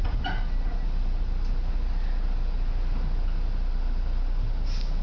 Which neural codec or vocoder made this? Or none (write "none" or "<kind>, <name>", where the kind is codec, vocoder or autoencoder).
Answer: none